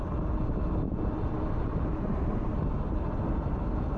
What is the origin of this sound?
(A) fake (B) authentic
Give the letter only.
B